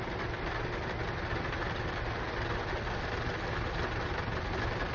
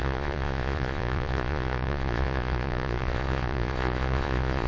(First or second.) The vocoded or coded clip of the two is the second